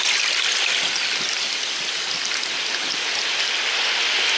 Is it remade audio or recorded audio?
recorded